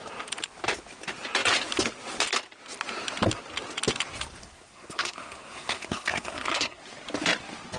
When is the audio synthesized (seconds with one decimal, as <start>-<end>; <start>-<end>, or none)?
4.4-6.8